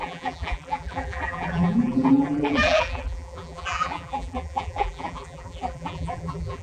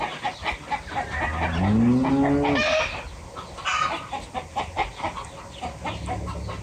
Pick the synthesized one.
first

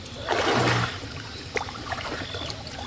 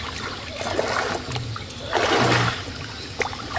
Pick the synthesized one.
first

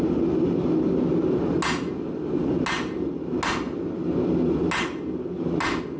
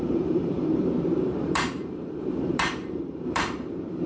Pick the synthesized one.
second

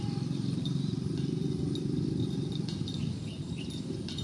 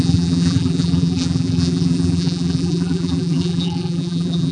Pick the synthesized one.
second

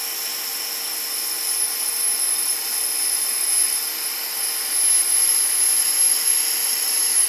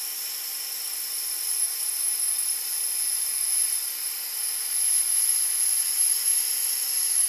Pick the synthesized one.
second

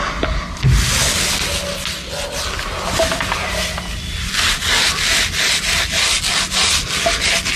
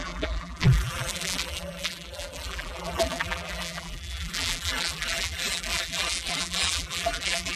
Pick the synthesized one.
second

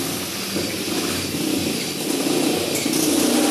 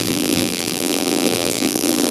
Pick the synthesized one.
second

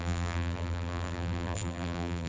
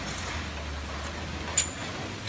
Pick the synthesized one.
first